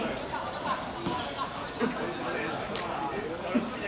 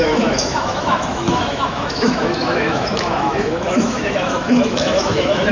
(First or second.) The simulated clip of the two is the second